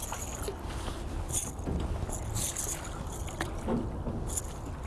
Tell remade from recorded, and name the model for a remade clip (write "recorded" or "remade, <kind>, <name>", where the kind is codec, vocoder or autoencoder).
recorded